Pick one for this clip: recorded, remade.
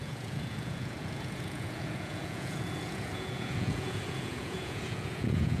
remade